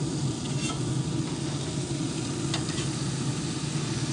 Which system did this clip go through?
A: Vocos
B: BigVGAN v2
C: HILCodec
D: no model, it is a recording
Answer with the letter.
D